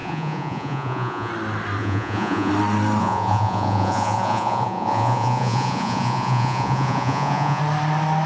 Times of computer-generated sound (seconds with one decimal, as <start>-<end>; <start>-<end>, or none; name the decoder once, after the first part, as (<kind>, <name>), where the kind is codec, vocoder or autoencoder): 0.0-1.3 (vocoder, Vocos); 1.8-2.5; 3.0-7.6